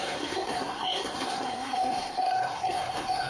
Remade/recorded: remade